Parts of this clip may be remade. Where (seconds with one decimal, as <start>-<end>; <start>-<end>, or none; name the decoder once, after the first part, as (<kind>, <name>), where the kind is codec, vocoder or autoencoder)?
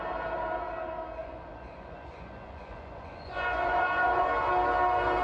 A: 1.2-4.3 (vocoder, Vocos)